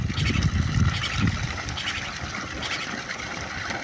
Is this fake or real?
fake